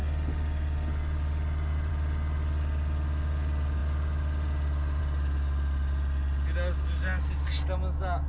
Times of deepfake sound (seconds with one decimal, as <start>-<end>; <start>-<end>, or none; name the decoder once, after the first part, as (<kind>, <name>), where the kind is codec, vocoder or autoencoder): none